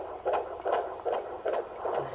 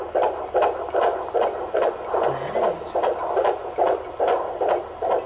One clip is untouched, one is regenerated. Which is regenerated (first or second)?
first